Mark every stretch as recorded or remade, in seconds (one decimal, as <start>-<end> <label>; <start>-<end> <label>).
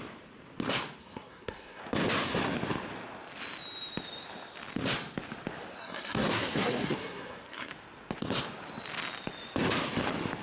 0.0-1.0 recorded; 1.0-1.8 remade; 1.8-5.8 recorded; 5.8-7.7 remade; 7.7-10.4 recorded